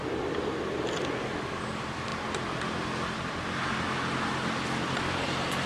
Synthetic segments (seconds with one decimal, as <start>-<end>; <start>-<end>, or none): none